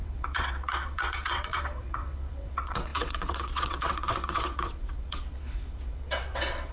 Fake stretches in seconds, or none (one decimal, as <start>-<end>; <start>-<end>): 0.0-6.7